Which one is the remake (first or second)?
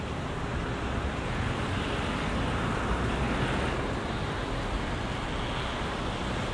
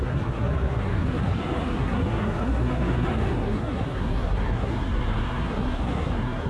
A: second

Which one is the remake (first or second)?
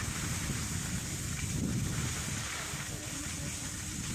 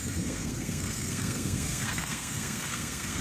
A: second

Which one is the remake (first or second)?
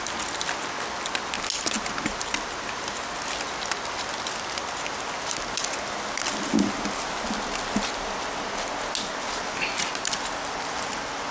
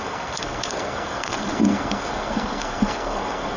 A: second